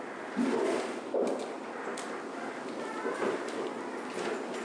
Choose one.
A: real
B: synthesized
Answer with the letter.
A